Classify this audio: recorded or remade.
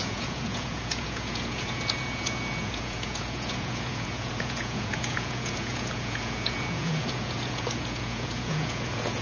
remade